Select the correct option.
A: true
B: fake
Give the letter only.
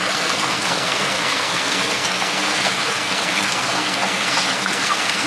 B